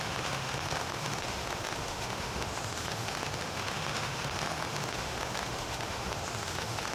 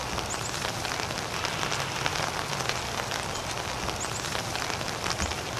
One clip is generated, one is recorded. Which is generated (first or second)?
first